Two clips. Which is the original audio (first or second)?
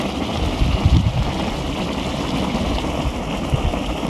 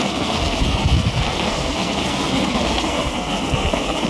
first